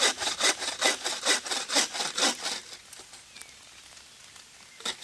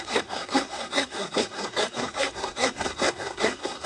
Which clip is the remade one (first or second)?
second